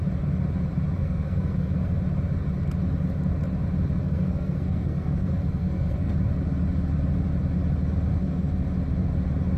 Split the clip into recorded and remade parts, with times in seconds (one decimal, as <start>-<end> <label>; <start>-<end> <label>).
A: 0.0-1.0 recorded; 1.0-2.0 remade; 2.0-4.0 recorded; 4.0-6.1 remade; 6.1-8.1 recorded; 8.1-8.7 remade; 8.7-9.6 recorded

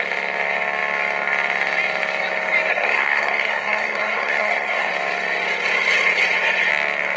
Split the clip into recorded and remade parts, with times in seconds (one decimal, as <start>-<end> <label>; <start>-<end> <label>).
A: 0.0-2.7 recorded; 2.7-4.9 remade; 4.9-7.2 recorded

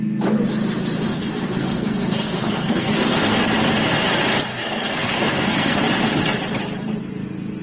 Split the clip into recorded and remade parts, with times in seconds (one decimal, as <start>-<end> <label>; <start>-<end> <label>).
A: 0.0-1.1 recorded; 1.1-3.5 remade; 3.5-4.5 recorded; 4.5-5.8 remade; 5.8-7.6 recorded

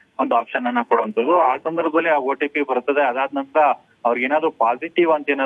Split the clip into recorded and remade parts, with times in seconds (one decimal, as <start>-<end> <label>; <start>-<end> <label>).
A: 0.0-2.0 remade; 2.0-5.5 recorded